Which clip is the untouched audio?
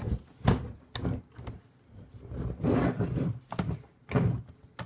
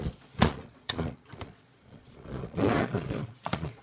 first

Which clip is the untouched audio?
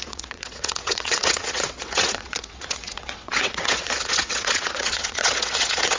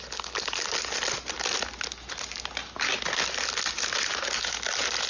second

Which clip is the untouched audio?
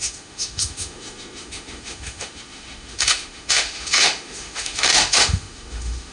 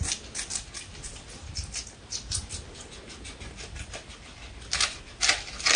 second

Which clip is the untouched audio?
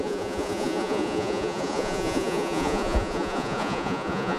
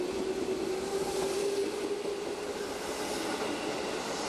second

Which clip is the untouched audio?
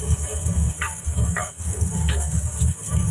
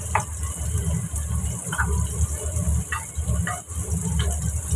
second